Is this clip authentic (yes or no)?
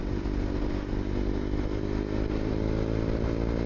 yes